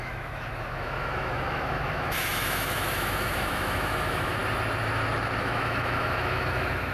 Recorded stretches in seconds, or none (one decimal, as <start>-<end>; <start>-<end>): 4.4-5.4